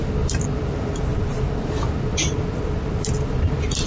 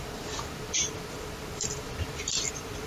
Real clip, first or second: first